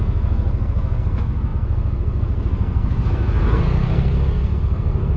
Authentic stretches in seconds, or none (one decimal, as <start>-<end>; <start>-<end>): none